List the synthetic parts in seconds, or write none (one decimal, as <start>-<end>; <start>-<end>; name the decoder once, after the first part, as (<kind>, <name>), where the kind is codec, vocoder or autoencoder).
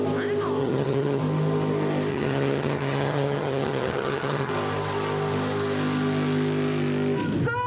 0.6-1.2 (vocoder, HiFi-GAN); 2.1-4.5